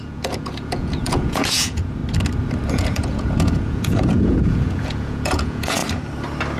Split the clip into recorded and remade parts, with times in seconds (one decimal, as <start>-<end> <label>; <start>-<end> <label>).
0.0-2.0 remade; 2.0-2.7 recorded; 2.7-5.8 remade; 5.8-6.6 recorded